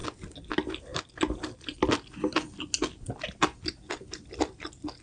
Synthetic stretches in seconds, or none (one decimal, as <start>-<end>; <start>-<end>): none